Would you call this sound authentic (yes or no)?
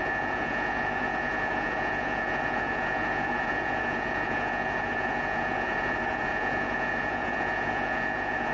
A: no